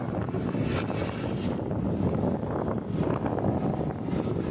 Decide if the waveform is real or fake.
real